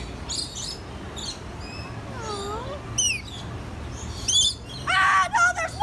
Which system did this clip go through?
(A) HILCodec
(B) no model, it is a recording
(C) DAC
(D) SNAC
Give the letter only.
B